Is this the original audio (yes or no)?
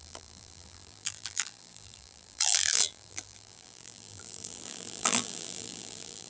no